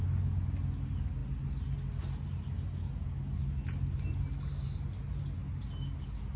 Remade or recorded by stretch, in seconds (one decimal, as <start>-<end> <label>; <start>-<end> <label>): 0.0-6.4 recorded